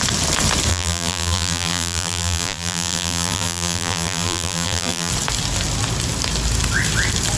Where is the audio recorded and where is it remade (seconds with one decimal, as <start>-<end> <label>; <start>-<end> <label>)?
0.0-0.7 recorded; 0.7-5.1 remade; 5.1-7.4 recorded